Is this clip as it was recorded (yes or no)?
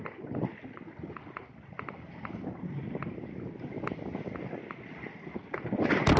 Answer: yes